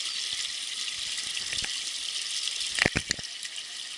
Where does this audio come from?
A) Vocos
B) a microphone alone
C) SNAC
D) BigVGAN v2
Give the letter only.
B